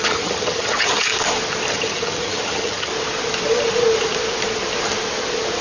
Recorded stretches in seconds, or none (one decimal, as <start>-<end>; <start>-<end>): 1.1-1.7; 2.9-5.6